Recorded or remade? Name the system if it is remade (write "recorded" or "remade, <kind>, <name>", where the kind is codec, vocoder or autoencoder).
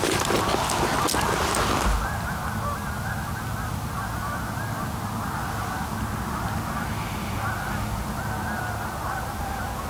recorded